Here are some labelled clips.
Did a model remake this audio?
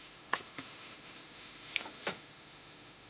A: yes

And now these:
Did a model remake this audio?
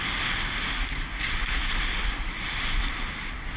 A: no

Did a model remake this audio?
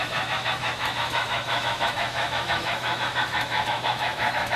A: yes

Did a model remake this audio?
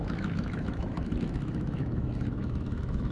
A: yes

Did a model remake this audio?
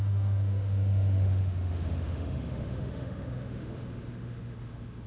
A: yes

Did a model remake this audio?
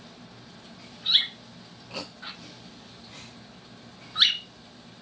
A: no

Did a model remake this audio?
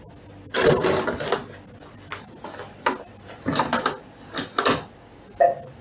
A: no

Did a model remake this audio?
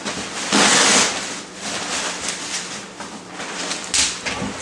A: no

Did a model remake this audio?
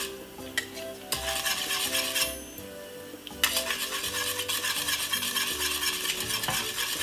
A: no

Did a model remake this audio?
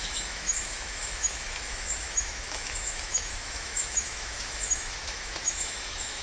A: yes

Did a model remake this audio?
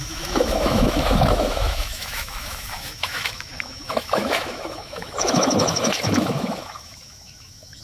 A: yes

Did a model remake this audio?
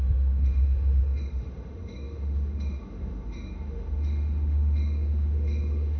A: yes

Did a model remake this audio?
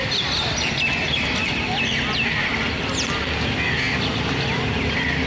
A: no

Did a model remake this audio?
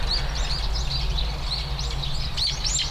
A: no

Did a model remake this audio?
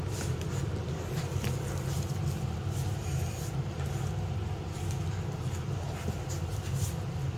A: no